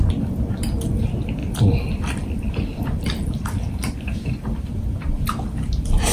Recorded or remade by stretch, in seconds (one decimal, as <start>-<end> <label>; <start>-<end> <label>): 0.0-1.4 recorded; 1.4-4.7 remade; 4.7-6.1 recorded